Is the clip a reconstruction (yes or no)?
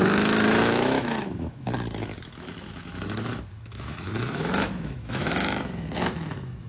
yes